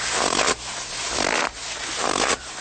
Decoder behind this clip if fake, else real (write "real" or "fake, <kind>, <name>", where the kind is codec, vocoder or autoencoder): real